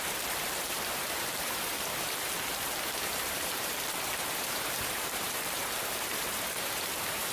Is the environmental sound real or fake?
fake